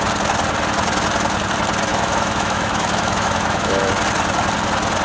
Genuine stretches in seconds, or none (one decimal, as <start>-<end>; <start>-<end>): 0.0-1.9; 3.9-5.0